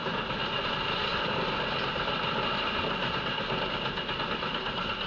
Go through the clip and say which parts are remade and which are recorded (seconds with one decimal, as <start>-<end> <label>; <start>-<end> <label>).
0.0-5.1 recorded